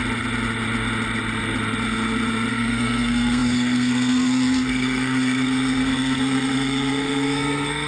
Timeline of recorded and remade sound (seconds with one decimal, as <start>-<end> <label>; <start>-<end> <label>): 0.0-2.5 recorded; 2.5-7.9 remade